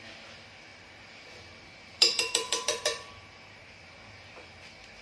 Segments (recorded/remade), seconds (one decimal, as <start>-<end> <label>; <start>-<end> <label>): 0.0-0.7 recorded; 0.7-3.7 remade; 3.7-5.0 recorded